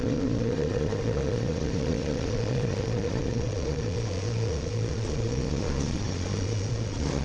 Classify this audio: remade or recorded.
remade